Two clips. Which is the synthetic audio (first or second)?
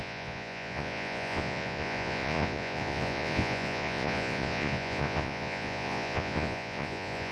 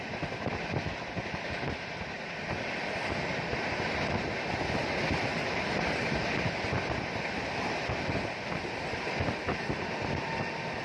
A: first